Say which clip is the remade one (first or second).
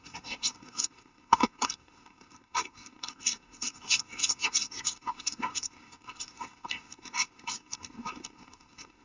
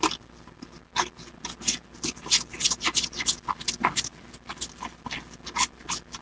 first